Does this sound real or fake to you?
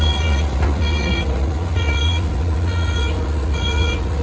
fake